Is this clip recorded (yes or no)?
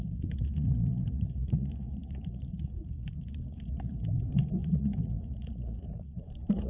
no